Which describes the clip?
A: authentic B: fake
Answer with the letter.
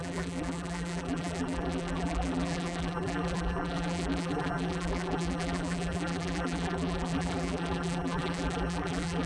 B